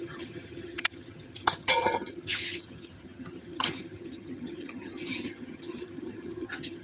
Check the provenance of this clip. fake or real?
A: fake